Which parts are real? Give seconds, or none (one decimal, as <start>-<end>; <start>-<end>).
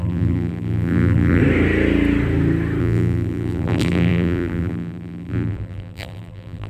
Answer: 1.4-2.8